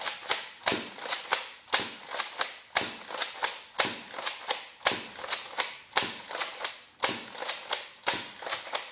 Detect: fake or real real